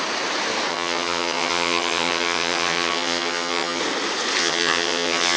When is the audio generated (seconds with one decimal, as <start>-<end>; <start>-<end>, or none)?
0.7-3.8; 4.4-5.4